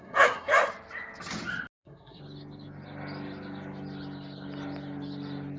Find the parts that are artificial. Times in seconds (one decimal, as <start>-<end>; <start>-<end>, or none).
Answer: 0.0-0.5; 1.8-2.2